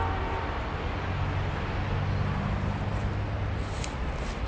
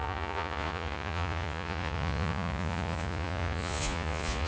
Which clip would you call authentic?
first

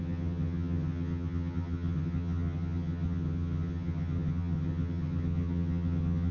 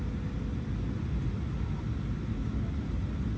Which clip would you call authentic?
second